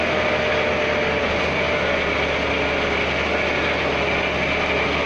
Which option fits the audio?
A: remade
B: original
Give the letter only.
B